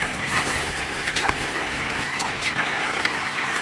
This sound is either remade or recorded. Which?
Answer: remade